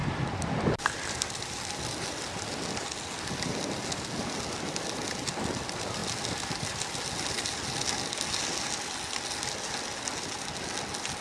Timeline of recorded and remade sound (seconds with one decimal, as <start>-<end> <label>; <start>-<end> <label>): 0.0-2.2 remade; 2.2-11.2 recorded